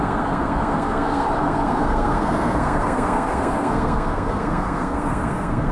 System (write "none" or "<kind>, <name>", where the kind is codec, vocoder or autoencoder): codec, SNAC